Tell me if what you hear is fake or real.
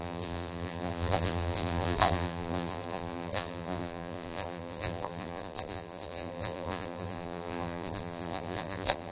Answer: fake